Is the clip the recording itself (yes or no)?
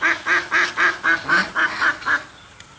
yes